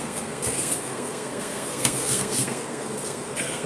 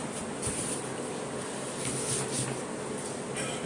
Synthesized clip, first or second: first